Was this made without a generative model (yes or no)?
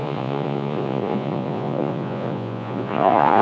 no